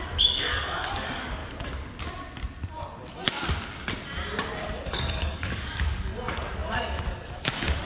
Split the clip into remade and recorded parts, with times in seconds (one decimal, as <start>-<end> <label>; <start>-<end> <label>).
0.0-1.4 remade; 1.4-4.9 recorded; 4.9-7.8 remade